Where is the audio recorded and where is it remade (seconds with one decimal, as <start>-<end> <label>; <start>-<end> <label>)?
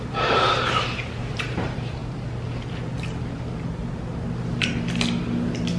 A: 0.0-2.0 remade; 2.0-5.8 recorded